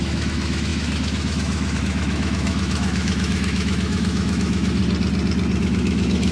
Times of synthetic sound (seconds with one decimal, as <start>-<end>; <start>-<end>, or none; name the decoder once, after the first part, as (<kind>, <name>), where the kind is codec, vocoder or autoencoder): 0.0-4.8 (autoencoder, DAC-VAE); 5.6-6.3